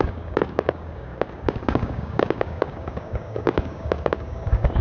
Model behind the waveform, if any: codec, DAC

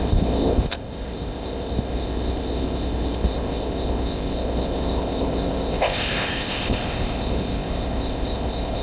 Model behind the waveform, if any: codec, ZipCodec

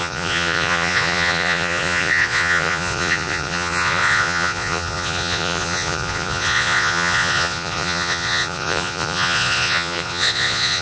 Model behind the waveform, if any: vocoder, Vocos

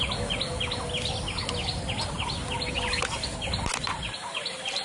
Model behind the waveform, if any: none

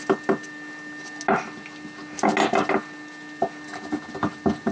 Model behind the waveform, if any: none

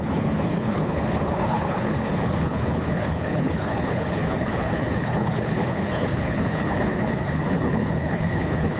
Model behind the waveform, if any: codec, HILCodec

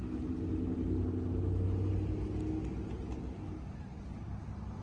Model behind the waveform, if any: none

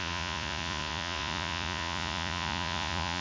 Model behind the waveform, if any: vocoder, Vocos